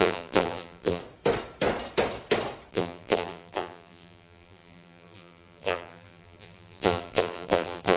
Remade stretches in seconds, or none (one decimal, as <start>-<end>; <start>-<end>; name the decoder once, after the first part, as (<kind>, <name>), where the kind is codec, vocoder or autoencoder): 0.0-1.0 (vocoder, BigVGAN v2); 2.7-8.0